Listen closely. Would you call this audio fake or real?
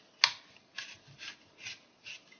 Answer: real